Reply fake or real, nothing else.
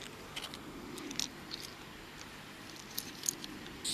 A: real